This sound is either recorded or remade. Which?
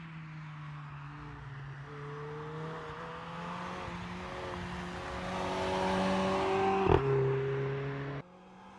recorded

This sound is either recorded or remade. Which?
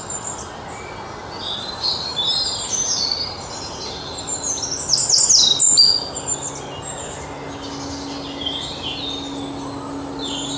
recorded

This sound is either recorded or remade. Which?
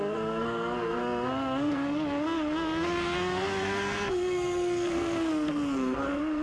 remade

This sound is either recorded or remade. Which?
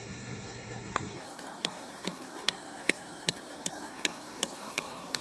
remade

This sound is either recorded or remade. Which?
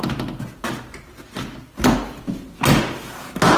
recorded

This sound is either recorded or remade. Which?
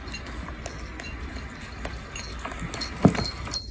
recorded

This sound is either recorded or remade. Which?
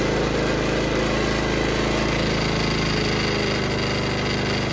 recorded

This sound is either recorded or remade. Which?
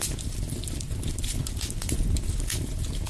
recorded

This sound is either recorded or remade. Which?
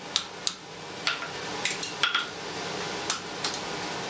recorded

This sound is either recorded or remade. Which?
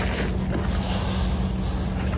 recorded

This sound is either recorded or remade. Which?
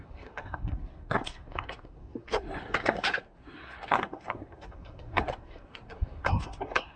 remade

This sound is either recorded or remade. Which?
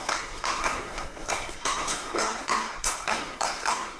remade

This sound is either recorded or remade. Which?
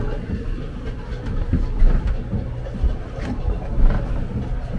recorded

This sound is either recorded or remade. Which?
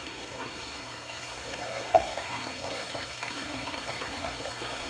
remade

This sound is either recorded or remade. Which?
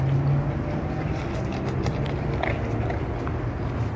recorded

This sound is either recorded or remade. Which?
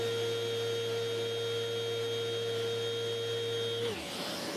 recorded